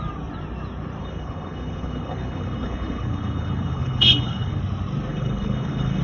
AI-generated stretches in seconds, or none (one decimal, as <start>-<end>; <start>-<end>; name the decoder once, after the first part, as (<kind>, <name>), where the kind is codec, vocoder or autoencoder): 1.0-4.6 (codec, HILCodec); 5.1-6.0